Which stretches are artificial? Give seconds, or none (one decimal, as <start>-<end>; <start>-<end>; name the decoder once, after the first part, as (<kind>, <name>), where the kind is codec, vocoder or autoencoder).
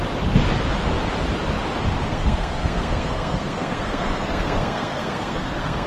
2.1-5.9 (codec, SNAC)